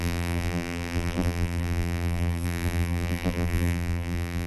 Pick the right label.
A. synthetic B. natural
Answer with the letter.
A